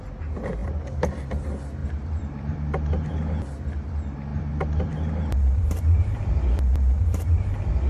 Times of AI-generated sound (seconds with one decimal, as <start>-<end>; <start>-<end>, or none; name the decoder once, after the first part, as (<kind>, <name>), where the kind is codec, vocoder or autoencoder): 1.8-3.4 (vocoder, BigVGAN v2); 4.3-7.4